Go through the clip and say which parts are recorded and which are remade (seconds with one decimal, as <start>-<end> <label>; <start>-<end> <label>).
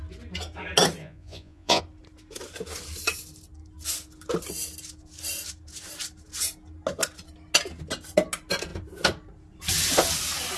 0.0-1.0 recorded; 1.0-1.8 remade; 1.8-10.6 recorded